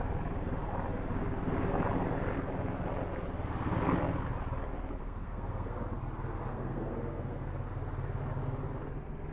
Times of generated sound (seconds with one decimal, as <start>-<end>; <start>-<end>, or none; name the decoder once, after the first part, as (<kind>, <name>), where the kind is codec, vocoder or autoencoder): 5.0-5.8 (codec, SNAC); 6.5-7.5